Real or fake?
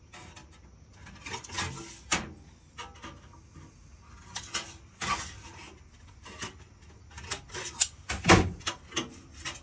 real